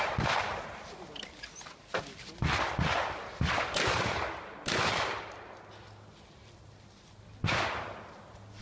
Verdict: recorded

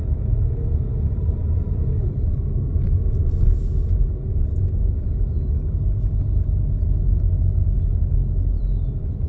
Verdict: recorded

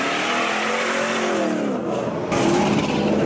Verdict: recorded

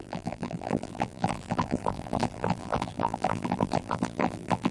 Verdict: remade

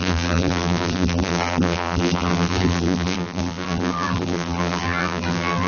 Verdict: remade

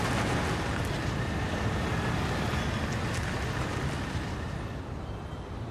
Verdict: recorded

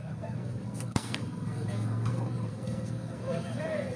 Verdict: remade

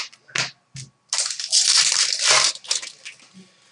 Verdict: recorded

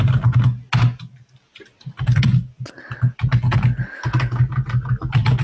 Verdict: recorded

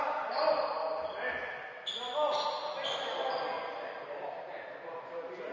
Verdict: recorded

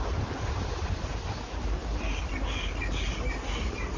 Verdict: recorded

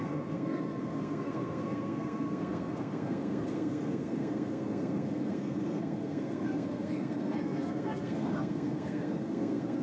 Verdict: remade